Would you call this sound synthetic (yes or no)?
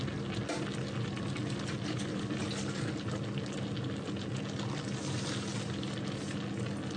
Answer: no